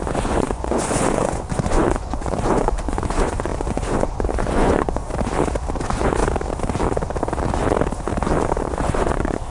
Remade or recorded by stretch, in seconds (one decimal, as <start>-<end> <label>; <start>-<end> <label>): 0.0-5.0 remade; 5.0-5.8 recorded; 5.8-6.2 remade; 6.2-8.6 recorded; 8.6-9.5 remade